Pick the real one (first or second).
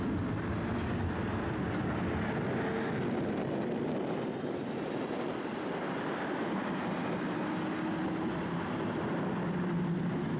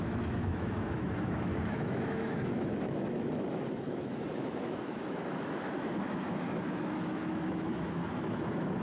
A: first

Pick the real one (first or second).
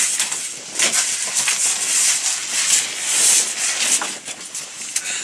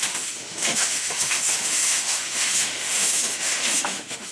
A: first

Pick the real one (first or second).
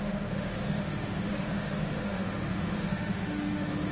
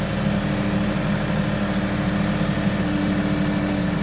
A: second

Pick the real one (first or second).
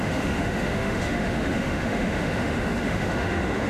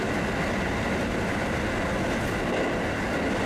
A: second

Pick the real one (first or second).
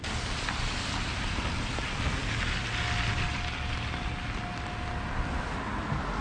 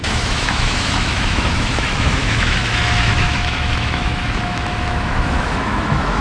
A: first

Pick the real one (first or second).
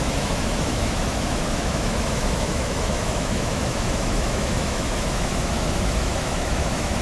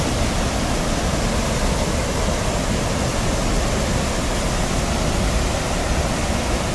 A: second